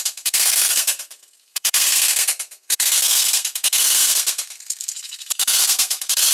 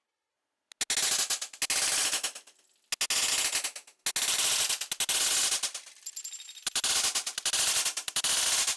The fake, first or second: first